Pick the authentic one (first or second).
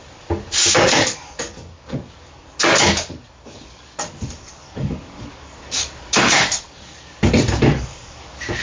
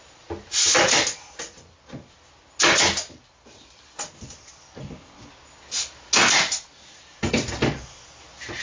second